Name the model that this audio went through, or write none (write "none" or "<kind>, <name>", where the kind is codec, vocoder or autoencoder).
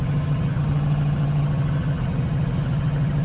vocoder, HiFi-GAN